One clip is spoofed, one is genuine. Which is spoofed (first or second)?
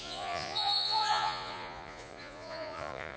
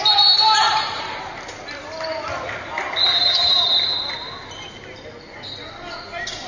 first